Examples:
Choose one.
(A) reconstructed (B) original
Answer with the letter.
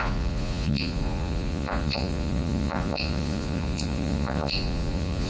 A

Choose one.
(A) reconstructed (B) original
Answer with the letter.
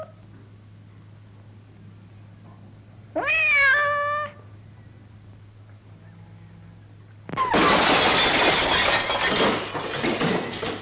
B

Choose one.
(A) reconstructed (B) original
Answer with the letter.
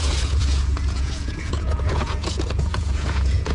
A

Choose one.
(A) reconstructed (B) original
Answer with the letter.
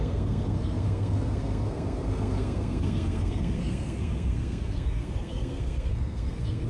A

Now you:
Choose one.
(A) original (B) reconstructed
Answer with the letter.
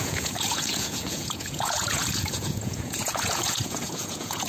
B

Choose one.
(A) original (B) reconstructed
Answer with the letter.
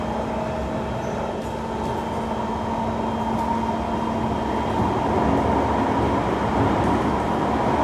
A